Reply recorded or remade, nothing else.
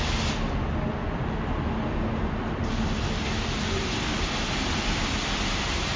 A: recorded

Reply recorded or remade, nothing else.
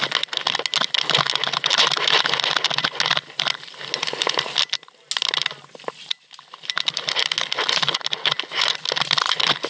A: recorded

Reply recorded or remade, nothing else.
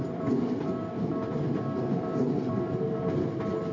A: recorded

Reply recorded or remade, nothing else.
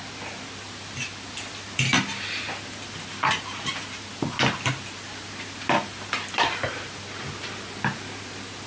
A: recorded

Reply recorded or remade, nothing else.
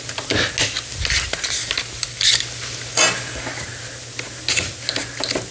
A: recorded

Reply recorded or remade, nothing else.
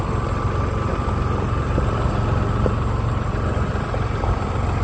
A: recorded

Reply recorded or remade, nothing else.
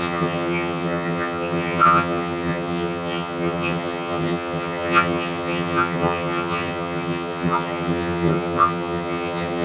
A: remade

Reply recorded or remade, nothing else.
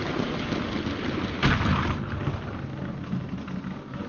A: recorded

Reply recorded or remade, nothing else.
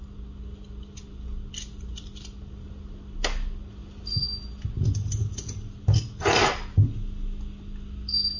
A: recorded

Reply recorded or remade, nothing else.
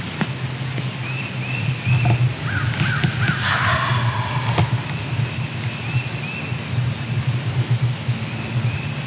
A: recorded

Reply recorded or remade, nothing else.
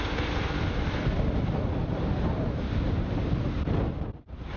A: recorded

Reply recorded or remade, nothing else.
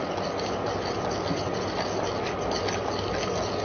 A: recorded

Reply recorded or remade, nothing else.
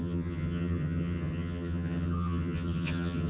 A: remade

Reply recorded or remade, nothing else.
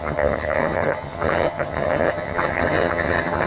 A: remade